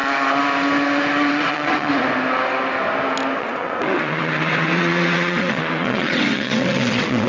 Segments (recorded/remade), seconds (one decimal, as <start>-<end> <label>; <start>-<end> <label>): 0.0-1.3 recorded; 1.3-1.9 remade; 1.9-3.4 recorded; 3.4-7.3 remade